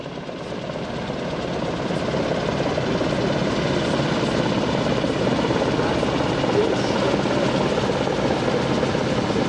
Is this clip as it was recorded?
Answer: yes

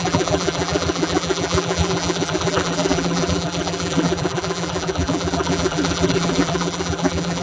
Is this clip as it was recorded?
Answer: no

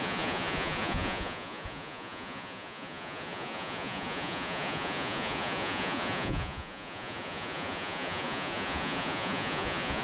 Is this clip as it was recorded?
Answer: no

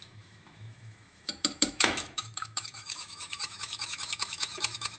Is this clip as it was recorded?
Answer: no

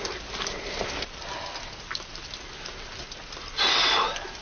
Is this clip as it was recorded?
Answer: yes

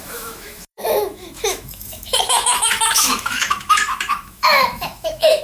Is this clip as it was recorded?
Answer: no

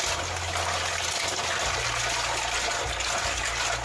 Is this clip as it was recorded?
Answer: yes